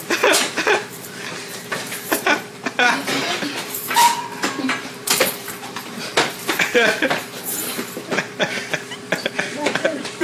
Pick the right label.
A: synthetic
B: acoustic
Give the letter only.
A